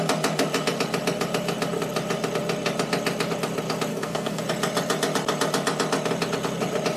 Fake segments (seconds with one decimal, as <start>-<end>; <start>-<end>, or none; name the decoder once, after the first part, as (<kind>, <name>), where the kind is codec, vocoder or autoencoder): 3.9-4.4 (codec, SNAC)